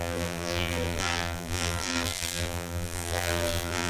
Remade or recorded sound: remade